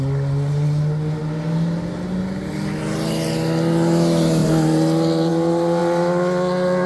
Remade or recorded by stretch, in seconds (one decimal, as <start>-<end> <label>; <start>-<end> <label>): 0.0-6.9 recorded